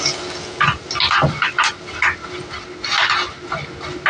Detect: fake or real real